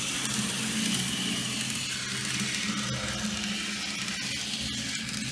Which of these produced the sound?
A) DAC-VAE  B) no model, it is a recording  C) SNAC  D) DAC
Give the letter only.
B